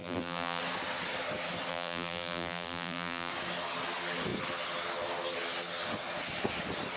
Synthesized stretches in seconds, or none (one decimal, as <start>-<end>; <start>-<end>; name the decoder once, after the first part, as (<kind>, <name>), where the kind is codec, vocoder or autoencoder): 0.0-0.6 (vocoder, BigVGAN v2); 1.7-3.3